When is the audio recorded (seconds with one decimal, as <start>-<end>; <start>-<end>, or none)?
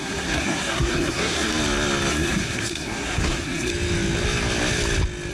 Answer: 1.5-2.1; 3.7-5.3